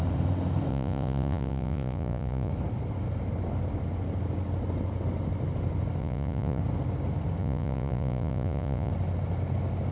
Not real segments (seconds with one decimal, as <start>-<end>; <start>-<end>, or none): 0.7-2.5; 6.0-6.6; 7.4-8.9